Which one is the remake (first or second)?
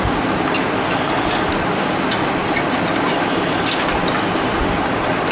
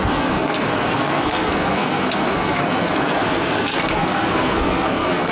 second